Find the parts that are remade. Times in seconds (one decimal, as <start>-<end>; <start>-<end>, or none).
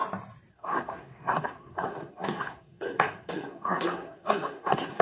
0.5-5.0